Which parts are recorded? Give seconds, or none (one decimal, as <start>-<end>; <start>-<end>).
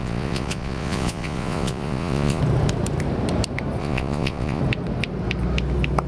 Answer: 2.4-3.8; 4.6-6.1